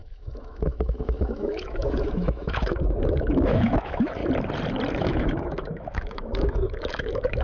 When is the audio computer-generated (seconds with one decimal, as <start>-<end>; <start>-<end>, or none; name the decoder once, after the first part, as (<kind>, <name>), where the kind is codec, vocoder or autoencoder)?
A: 0.0-4.2 (autoencoder, DAC-VAE); 5.0-7.4

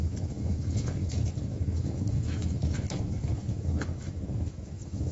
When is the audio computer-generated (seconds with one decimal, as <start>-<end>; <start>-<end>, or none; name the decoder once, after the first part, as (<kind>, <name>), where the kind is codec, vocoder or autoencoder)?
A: 0.0-5.1 (autoencoder, DAC-VAE)

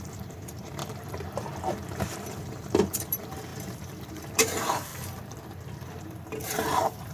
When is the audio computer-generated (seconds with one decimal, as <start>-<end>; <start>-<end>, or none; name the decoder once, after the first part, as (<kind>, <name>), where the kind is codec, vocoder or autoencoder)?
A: 0.0-0.8 (vocoder, BigVGAN v2); 1.7-4.9; 6.0-7.1

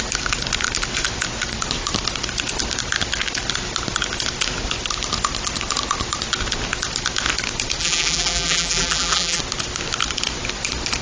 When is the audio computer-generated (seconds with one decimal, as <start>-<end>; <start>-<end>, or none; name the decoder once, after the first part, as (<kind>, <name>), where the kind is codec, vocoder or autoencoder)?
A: 7.8-9.4 (vocoder, BigVGAN v2)

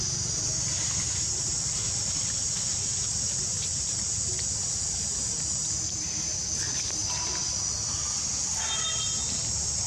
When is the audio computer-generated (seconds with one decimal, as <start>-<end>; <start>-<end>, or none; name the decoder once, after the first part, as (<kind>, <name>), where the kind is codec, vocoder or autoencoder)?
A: none